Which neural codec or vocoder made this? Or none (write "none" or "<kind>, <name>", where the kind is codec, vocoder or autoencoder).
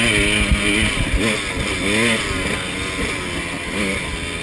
none